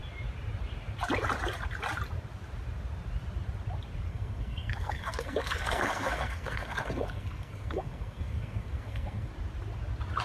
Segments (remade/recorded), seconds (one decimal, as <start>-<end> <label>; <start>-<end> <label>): 0.0-4.1 recorded; 4.1-9.3 remade; 9.3-10.2 recorded